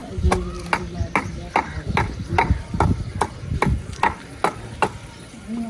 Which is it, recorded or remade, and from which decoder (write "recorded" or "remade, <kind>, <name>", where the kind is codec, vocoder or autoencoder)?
recorded